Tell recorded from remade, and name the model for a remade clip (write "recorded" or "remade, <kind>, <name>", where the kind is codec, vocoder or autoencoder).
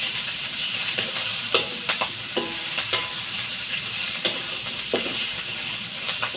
remade, vocoder, BigVGAN v2